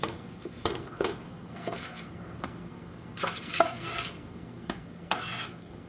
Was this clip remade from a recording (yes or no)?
yes